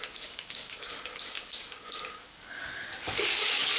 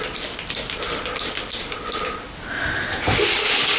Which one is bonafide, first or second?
second